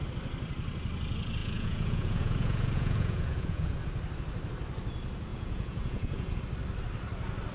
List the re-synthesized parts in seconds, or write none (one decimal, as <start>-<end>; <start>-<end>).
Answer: 1.4-3.8; 5.3-6.4